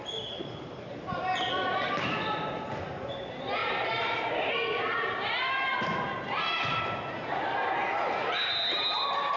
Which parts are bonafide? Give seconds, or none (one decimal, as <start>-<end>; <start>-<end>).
0.0-3.6; 4.5-9.4